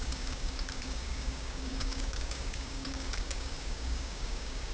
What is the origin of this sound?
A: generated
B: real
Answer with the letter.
A